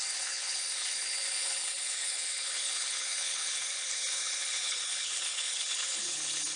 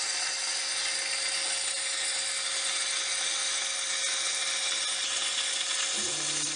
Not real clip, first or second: first